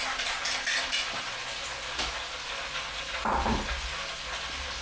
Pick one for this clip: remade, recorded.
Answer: recorded